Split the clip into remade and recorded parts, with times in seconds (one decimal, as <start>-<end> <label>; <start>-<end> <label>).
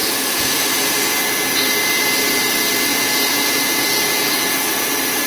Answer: 0.0-1.2 remade; 1.2-2.9 recorded; 2.9-4.8 remade; 4.8-5.3 recorded